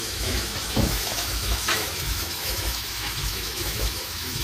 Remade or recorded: remade